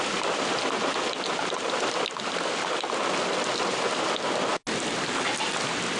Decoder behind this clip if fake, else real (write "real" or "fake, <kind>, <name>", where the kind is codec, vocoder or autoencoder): real